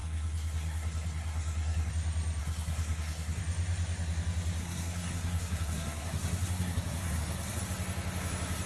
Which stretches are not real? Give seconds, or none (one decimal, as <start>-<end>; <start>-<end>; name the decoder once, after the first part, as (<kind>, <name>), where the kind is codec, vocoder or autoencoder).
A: 0.0-1.9 (codec, SNAC); 2.4-3.4; 4.6-7.6